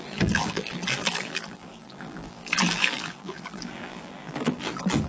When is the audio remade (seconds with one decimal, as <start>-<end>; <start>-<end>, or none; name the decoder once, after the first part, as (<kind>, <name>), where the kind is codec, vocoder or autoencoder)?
0.0-5.1 (vocoder, BigVGAN v2)